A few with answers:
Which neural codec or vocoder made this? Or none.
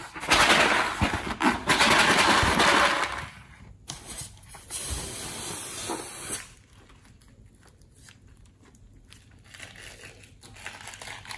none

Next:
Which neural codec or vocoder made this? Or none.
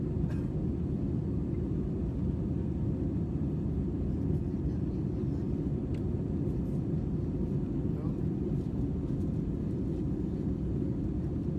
none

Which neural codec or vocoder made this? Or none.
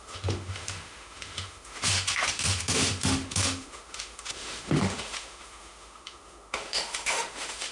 autoencoder, DAC-VAE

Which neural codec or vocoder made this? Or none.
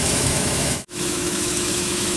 autoencoder, DAC-VAE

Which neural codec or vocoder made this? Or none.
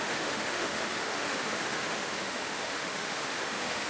autoencoder, DAC-VAE